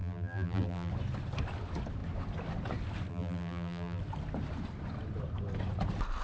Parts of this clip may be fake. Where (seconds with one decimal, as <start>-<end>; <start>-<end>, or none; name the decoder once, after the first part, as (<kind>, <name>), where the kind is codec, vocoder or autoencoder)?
0.0-0.9 (vocoder, BigVGAN v2); 3.1-4.0